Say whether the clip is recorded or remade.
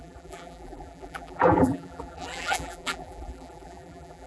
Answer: remade